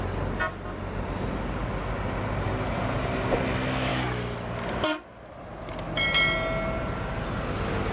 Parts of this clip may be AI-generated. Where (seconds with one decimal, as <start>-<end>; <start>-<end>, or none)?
none